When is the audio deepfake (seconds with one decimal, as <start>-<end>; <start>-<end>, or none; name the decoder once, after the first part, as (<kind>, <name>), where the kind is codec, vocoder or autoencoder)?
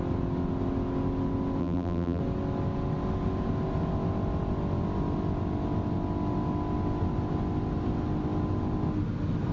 1.6-2.2 (vocoder, BigVGAN v2)